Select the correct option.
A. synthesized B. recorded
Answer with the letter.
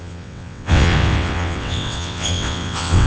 A